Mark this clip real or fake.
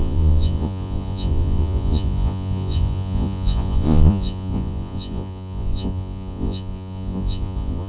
fake